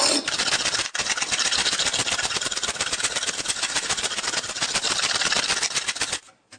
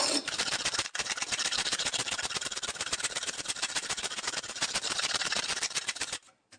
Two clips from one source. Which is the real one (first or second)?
first